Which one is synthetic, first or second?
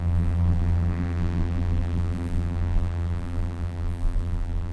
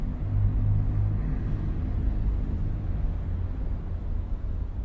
first